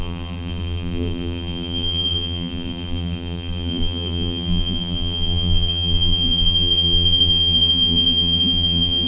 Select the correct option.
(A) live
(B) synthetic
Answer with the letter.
B